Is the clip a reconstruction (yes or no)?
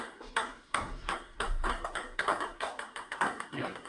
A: yes